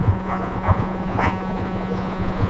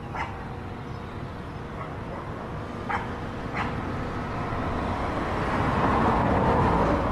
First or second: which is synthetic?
first